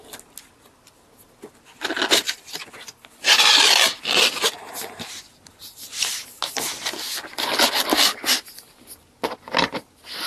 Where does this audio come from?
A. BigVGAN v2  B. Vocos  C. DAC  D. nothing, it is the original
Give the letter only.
D